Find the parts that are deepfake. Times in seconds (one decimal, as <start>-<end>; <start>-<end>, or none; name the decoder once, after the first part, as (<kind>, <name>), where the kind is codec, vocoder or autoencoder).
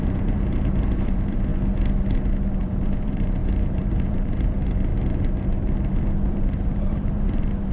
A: 0.0-1.5 (vocoder, BigVGAN v2); 2.6-4.9; 6.3-7.7